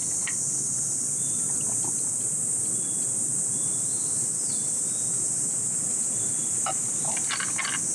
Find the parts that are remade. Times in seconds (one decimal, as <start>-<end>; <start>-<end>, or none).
none